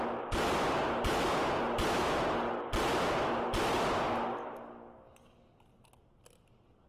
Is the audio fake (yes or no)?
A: no